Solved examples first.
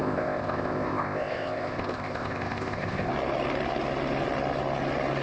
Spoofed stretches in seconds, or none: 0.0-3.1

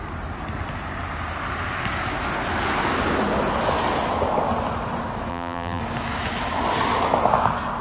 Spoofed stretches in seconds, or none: 5.3-5.8

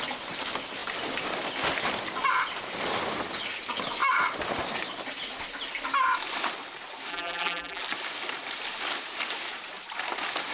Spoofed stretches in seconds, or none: 7.1-7.8